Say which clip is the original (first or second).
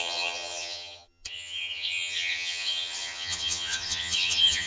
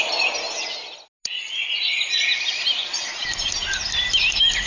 second